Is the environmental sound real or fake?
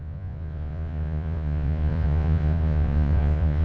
fake